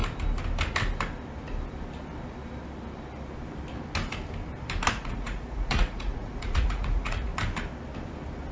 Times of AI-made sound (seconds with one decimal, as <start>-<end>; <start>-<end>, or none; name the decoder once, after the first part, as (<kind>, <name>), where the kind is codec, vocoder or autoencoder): 4.9-7.3 (vocoder, Vocos)